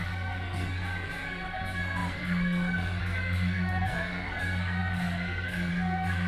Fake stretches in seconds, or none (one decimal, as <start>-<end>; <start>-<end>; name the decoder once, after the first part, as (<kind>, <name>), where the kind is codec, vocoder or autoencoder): 0.0-6.3 (codec, SNAC)